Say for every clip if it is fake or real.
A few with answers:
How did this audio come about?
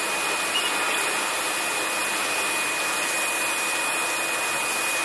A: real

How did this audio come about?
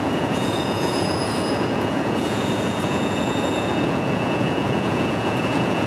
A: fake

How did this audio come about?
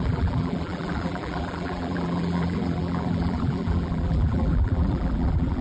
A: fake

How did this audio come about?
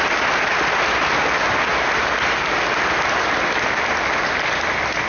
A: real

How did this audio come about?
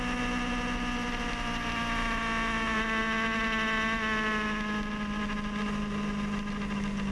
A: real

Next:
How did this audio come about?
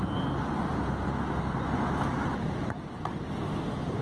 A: real